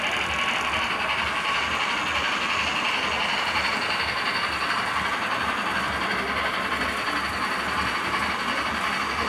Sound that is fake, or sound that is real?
real